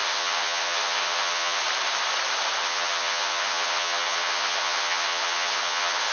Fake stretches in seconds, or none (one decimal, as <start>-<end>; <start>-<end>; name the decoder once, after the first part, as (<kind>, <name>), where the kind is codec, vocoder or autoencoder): 0.0-1.6 (vocoder, HiFi-GAN); 2.6-6.1